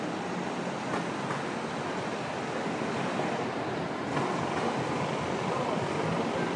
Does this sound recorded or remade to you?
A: recorded